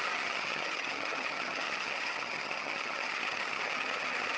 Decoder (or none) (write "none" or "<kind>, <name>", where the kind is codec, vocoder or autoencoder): vocoder, HiFi-GAN